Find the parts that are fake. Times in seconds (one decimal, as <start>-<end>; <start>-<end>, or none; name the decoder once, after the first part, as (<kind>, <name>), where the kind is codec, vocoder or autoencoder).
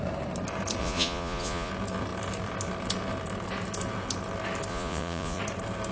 0.8-1.7 (vocoder, Vocos); 4.7-5.4